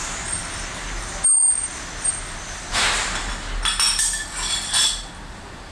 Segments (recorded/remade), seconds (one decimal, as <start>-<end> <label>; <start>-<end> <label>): 0.0-5.7 recorded